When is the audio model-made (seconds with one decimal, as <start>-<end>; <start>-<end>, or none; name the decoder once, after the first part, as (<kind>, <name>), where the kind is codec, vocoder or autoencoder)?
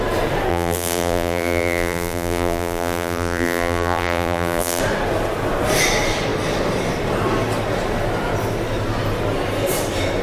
0.5-4.8 (vocoder, BigVGAN v2)